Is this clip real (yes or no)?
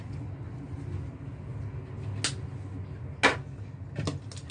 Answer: yes